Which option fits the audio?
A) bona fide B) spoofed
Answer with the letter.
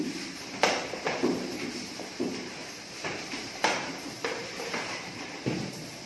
B